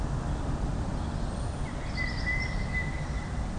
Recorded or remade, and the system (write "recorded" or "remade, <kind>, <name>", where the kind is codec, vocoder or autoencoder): recorded